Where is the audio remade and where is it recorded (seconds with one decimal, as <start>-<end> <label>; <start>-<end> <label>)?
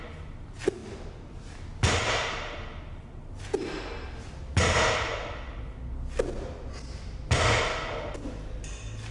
0.0-9.1 recorded